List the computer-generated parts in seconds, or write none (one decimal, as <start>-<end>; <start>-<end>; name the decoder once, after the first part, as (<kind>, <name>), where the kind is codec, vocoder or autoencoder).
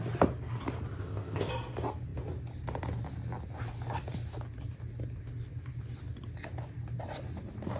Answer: 1.0-1.5 (codec, ZipCodec)